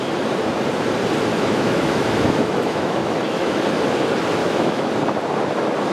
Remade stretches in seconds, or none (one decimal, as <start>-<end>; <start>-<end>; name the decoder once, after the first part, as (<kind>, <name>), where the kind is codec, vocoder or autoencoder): 1.3-3.6 (autoencoder, DAC-VAE); 4.4-4.9

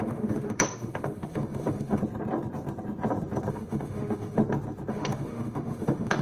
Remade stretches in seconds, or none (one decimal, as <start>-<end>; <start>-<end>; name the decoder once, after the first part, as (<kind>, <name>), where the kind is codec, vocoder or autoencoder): 0.0-2.0 (autoencoder, DAC-VAE); 3.5-4.4; 4.9-6.2

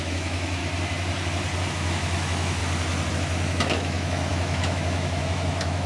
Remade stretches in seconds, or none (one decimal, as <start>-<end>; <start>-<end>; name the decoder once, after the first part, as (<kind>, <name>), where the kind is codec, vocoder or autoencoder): 0.0-0.6 (autoencoder, DAC-VAE); 1.7-2.6; 3.1-5.9

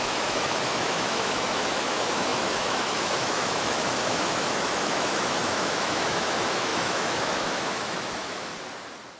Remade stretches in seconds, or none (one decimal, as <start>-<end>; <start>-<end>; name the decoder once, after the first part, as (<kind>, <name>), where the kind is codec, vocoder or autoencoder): 0.0-8.5 (autoencoder, DAC-VAE)

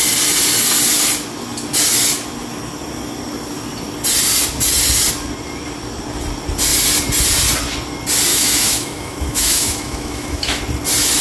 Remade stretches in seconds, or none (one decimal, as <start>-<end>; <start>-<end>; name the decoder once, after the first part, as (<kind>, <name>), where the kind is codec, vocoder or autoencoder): 8.3-10.6 (autoencoder, DAC-VAE)

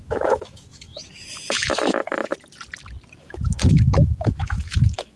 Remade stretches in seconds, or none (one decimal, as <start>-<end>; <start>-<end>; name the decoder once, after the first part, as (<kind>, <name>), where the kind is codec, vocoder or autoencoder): 0.0-2.3 (autoencoder, DAC-VAE); 3.2-5.2